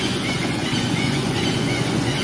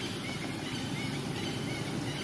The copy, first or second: first